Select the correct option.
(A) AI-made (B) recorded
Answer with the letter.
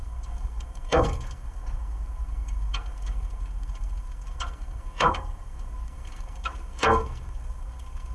A